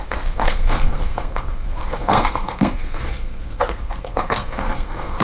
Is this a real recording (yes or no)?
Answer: no